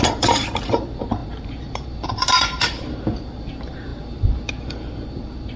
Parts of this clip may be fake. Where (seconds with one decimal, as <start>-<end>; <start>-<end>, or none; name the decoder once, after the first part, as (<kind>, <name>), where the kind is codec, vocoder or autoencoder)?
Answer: 0.0-5.6 (vocoder, BigVGAN v2)